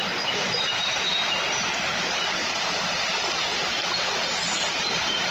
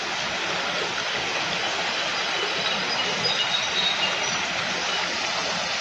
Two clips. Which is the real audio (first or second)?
second